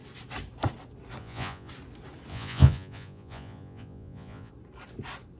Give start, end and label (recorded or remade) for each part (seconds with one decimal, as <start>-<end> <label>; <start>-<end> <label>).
0.0-1.2 recorded; 1.2-1.7 remade; 1.7-2.3 recorded; 2.3-4.5 remade; 4.5-5.4 recorded